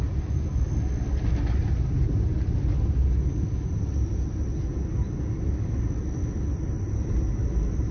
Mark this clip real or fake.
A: real